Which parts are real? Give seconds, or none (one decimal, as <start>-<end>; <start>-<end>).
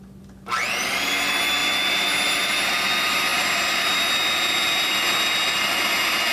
0.0-6.3